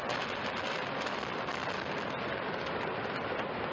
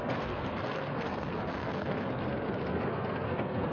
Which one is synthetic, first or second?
second